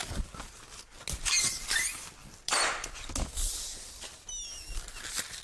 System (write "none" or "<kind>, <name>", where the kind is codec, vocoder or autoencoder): none